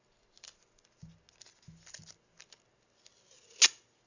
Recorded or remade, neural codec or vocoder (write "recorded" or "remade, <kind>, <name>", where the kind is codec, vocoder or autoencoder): recorded